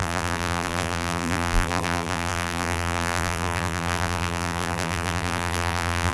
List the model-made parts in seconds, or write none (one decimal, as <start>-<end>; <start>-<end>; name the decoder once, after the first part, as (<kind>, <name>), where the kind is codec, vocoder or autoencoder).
0.0-6.1 (vocoder, BigVGAN v2)